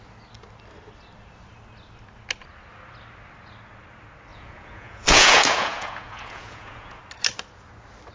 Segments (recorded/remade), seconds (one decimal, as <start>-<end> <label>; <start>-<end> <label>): 0.0-4.3 recorded; 4.3-7.0 remade; 7.0-8.1 recorded